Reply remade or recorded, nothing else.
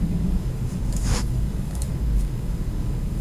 remade